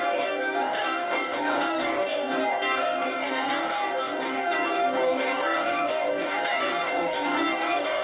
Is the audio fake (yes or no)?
yes